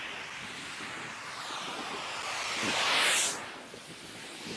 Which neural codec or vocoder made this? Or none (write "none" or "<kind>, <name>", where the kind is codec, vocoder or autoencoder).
none